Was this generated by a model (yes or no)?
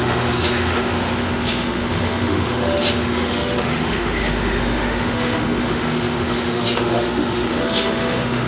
yes